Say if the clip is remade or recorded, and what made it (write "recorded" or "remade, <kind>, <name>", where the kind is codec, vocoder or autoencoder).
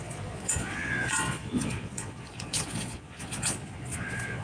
remade, vocoder, Vocos